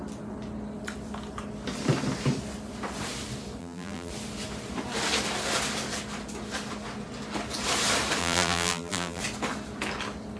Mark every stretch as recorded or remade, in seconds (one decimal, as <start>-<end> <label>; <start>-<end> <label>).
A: 0.0-3.6 recorded; 3.6-4.1 remade; 4.1-8.2 recorded; 8.2-9.2 remade; 9.2-10.4 recorded